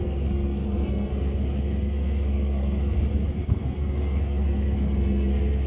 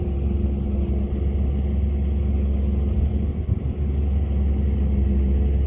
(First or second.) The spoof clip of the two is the first